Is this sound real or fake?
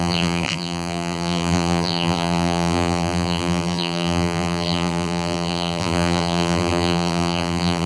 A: fake